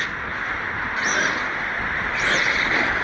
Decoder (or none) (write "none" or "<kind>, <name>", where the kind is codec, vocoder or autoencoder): none